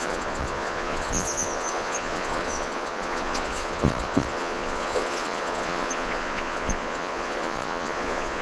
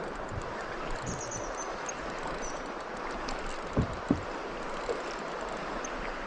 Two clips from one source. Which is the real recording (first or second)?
second